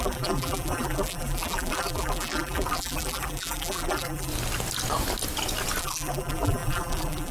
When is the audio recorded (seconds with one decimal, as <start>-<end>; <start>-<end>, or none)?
4.3-5.8